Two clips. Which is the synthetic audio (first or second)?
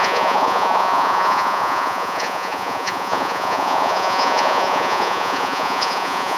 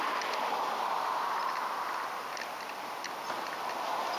first